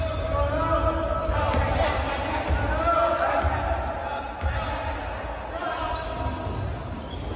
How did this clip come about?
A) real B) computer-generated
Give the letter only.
A